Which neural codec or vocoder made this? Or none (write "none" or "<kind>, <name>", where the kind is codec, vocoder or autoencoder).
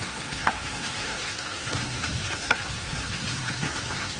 codec, SNAC